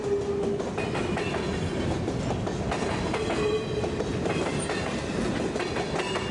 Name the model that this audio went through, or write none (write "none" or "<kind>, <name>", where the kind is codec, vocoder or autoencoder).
none